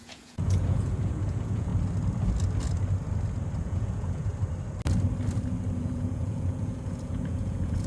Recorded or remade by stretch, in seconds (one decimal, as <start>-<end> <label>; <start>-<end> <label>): 0.0-1.7 remade; 1.7-3.6 recorded; 3.6-4.3 remade; 4.3-5.8 recorded; 5.8-7.9 remade